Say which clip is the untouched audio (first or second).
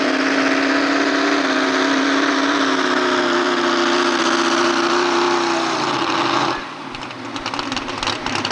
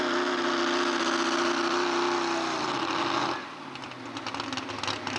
second